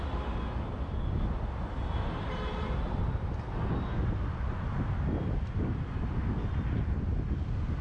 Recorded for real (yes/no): yes